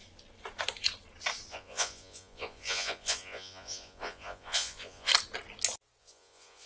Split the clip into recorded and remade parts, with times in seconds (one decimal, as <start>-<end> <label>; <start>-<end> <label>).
0.0-1.5 recorded; 1.5-5.1 remade; 5.1-6.0 recorded; 6.0-6.7 remade